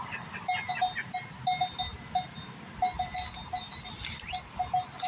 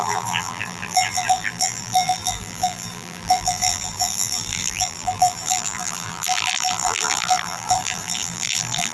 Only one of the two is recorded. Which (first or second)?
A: first